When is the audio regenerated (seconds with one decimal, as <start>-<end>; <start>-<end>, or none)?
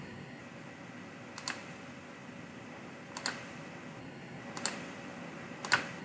0.0-0.4; 4.0-4.4